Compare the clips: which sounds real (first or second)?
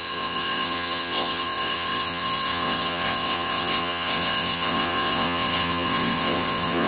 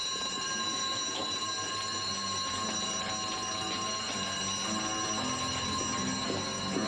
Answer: second